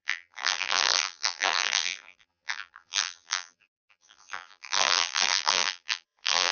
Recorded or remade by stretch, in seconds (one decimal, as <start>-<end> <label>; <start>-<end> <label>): 0.0-6.5 remade

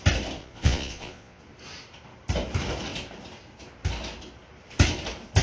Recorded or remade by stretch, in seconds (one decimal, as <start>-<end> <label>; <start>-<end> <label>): 0.0-0.4 recorded; 0.4-1.4 remade; 1.4-5.4 recorded

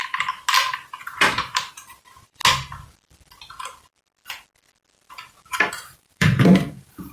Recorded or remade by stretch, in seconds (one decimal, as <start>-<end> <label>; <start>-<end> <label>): 0.0-0.9 recorded; 0.9-2.4 remade; 2.4-5.7 recorded; 5.7-7.1 remade

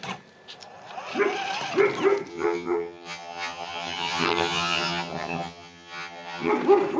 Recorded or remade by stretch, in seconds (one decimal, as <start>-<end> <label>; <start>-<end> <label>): 0.0-2.3 recorded; 2.3-6.5 remade; 6.5-7.0 recorded

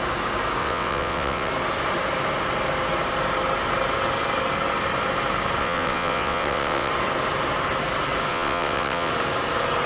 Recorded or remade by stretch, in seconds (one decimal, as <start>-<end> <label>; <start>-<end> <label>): 0.0-0.6 recorded; 0.6-1.5 remade; 1.5-5.6 recorded; 5.6-6.9 remade; 6.9-8.3 recorded; 8.3-9.1 remade; 9.1-9.9 recorded

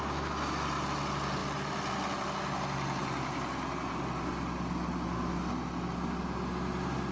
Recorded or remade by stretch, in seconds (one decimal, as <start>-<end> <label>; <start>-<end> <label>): 0.0-7.1 recorded

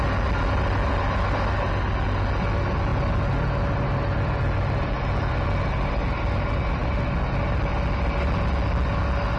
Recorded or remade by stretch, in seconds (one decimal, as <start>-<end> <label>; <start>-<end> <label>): 0.0-9.4 recorded

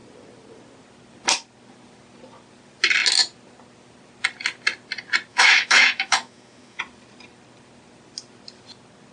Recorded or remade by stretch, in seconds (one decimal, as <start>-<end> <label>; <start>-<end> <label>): 0.0-5.3 recorded; 5.3-6.8 remade; 6.8-9.1 recorded